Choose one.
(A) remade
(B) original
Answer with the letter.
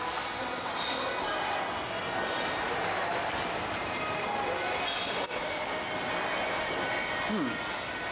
B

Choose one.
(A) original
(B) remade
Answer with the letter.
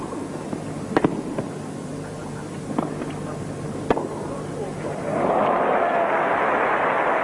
A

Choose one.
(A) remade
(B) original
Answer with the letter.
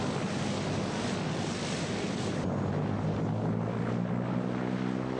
B